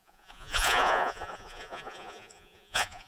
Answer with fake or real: fake